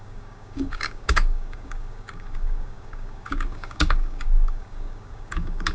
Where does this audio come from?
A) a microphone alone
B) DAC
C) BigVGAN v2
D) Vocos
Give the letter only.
B